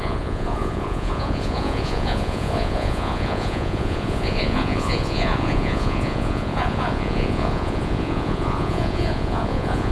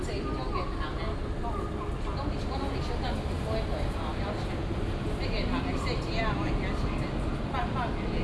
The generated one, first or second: first